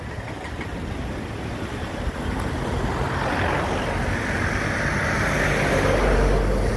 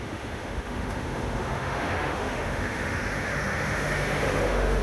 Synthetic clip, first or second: second